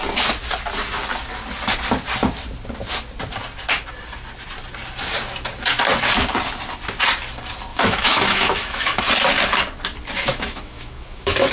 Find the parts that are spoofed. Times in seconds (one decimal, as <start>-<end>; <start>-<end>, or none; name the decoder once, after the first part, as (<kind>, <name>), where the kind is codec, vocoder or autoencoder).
7.7-9.0 (autoencoder, DAC-VAE); 10.3-11.5